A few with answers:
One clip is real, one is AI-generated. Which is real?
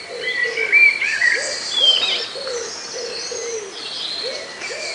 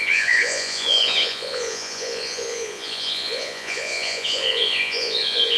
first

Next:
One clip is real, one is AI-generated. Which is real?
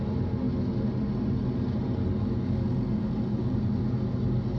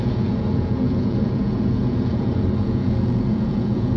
first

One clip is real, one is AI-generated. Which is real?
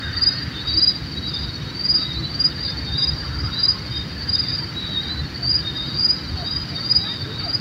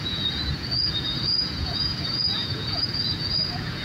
first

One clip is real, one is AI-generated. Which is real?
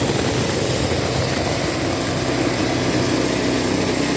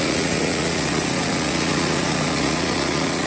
first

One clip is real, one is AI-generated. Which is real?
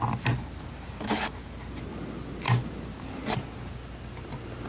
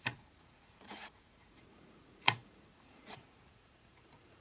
first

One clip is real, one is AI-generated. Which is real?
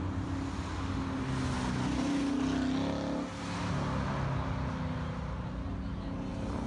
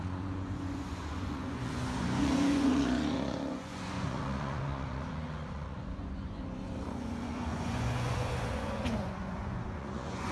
first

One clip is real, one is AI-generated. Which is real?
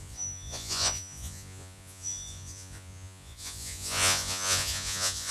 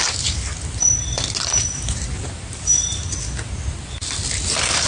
second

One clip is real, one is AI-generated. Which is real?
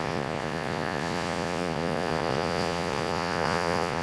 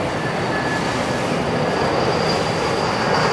second